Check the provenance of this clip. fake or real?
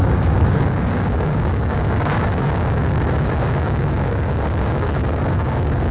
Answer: fake